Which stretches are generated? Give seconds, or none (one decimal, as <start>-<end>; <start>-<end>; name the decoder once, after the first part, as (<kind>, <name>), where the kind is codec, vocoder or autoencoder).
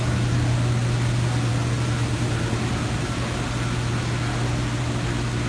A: none